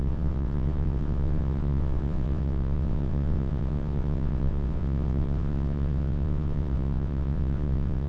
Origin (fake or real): fake